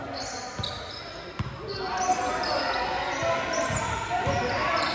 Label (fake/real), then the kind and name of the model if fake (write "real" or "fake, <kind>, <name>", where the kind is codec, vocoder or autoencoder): real